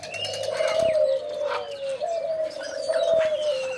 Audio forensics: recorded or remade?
recorded